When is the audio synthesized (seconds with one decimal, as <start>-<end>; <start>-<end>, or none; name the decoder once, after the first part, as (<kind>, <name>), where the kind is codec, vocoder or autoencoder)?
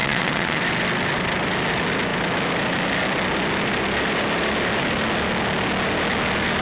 0.0-0.6 (vocoder, WaveNeXt)